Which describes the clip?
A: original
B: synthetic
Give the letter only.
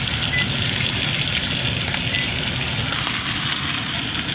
A